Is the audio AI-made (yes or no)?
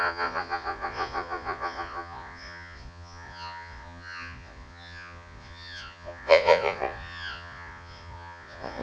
yes